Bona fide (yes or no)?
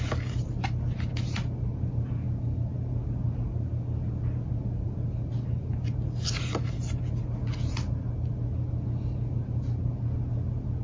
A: yes